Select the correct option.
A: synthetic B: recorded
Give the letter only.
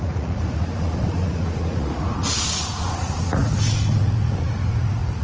A